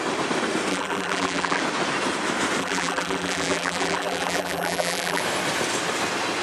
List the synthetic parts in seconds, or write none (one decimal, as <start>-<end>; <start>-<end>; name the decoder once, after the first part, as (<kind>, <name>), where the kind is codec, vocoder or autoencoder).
0.7-1.6 (vocoder, BigVGAN v2); 2.6-5.2